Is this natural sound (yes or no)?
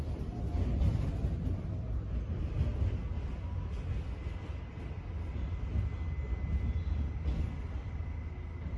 yes